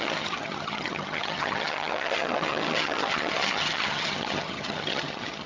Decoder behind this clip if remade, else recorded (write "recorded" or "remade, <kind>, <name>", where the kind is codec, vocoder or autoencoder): remade, vocoder, HiFi-GAN